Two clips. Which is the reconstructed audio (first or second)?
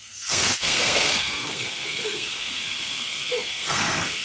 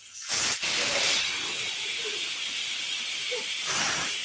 first